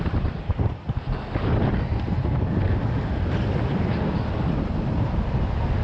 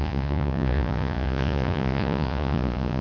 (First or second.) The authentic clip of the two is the first